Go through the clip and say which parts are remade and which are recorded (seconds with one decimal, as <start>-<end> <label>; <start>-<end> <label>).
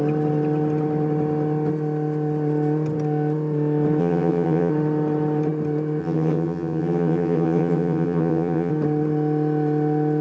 0.0-4.0 recorded; 4.0-4.7 remade; 4.7-6.0 recorded; 6.0-8.7 remade; 8.7-10.2 recorded